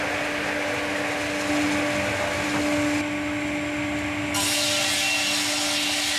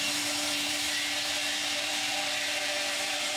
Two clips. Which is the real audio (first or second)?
first